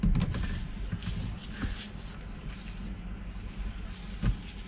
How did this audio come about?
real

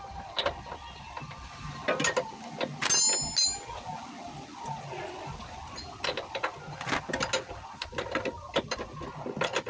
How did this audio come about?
real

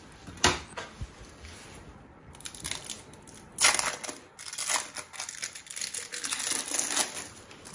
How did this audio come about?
real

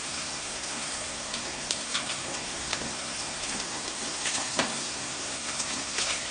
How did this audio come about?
fake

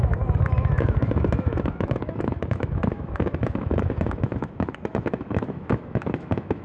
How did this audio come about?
fake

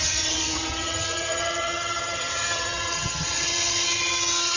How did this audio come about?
fake